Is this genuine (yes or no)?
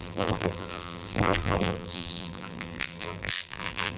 no